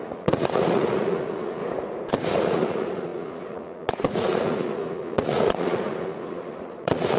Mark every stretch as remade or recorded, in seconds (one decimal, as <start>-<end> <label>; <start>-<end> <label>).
0.0-1.6 remade; 1.6-2.1 recorded; 2.1-7.2 remade